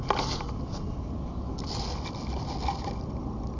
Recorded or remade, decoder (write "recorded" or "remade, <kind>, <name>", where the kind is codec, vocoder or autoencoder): recorded